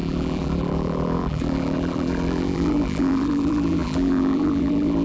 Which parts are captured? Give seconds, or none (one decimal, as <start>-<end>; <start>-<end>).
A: none